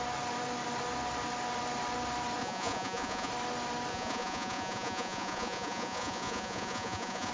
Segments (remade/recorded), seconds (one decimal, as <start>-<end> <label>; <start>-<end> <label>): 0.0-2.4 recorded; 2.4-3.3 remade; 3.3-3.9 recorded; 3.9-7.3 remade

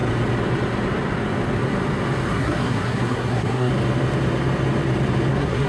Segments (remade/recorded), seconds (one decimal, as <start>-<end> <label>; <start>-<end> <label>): 0.0-2.3 recorded; 2.3-3.7 remade; 3.7-5.3 recorded; 5.3-5.7 remade

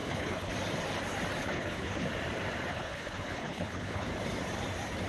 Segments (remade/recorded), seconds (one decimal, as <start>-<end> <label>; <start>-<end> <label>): 0.0-0.5 remade; 0.5-1.4 recorded; 1.4-2.1 remade; 2.1-2.7 recorded; 2.7-4.1 remade; 4.1-5.1 recorded